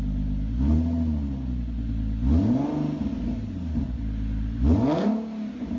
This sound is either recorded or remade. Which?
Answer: recorded